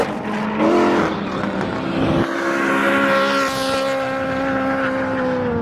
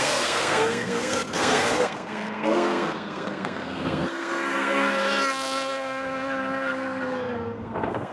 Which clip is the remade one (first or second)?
second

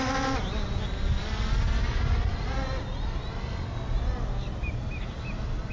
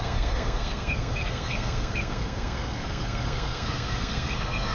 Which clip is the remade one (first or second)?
second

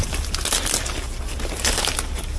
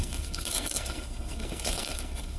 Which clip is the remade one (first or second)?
second